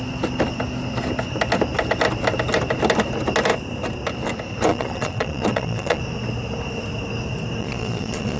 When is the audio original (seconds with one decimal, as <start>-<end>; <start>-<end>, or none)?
0.0-4.7; 6.0-7.6

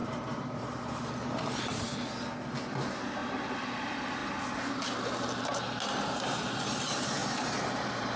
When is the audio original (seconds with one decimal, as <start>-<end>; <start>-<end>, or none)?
1.8-3.2; 3.8-7.2

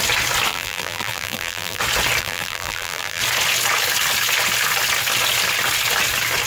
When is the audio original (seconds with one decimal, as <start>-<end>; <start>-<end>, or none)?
0.0-0.5; 1.8-2.2; 3.2-6.5

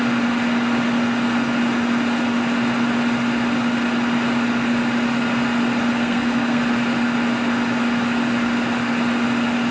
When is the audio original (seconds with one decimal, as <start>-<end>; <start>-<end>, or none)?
0.0-5.9; 6.6-9.7

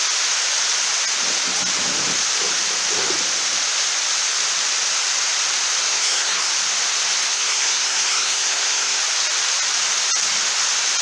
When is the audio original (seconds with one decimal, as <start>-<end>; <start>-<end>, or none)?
0.0-5.9; 6.5-7.3; 9.0-11.0

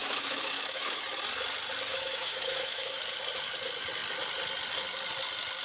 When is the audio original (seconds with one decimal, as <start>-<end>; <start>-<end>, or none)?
1.0-1.9; 2.9-5.6

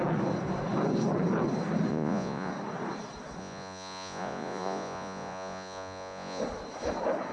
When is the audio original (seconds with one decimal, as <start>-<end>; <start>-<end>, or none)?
0.0-1.9; 2.5-3.4; 6.4-7.3

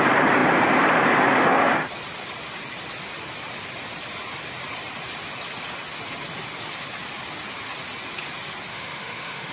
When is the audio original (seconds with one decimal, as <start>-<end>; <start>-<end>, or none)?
0.0-8.7